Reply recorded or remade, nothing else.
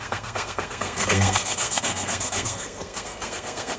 remade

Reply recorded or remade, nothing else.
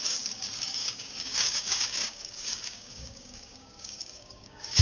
remade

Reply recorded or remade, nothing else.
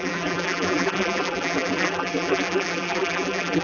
remade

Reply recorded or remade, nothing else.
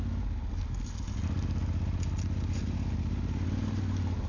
recorded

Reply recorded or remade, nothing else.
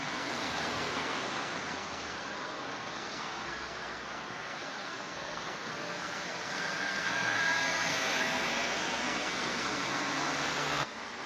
remade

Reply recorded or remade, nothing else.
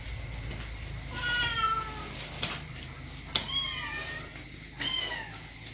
recorded